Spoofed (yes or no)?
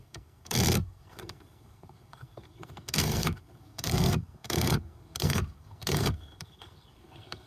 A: yes